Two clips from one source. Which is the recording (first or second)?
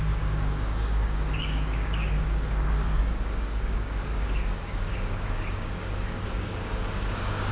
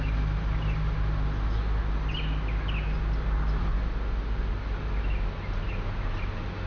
second